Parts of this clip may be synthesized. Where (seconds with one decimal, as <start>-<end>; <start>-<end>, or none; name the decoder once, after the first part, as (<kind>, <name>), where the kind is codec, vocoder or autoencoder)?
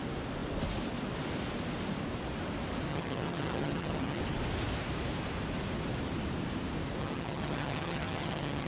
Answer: 2.9-4.2 (vocoder, HiFi-GAN); 7.0-8.7